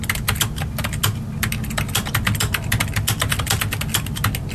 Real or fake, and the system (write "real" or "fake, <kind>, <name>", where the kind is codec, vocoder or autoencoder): real